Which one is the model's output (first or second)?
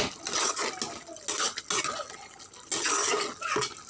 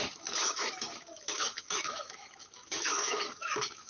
second